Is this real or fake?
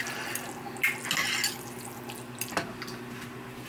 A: real